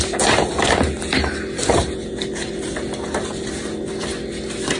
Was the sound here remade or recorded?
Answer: recorded